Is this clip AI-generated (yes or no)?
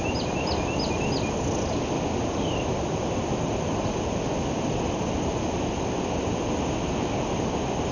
no